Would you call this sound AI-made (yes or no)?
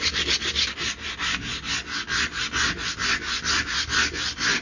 no